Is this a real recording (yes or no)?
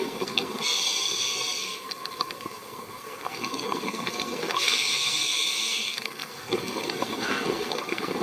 no